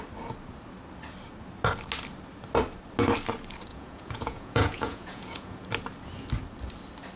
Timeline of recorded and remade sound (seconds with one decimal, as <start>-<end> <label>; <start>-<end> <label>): 0.0-3.7 recorded; 3.7-5.7 remade; 5.7-7.2 recorded